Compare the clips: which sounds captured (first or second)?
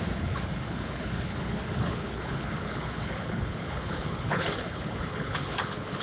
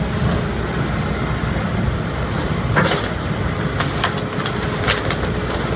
second